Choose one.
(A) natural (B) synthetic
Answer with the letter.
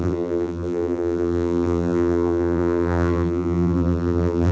B